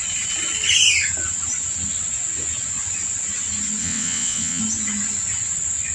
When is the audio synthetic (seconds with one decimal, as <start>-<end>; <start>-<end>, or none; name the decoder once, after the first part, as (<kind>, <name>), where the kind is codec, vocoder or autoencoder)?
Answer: 3.8-4.6 (vocoder, WaveNeXt)